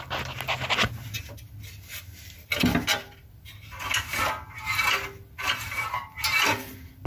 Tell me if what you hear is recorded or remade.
recorded